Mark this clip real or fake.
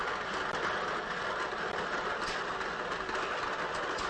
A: real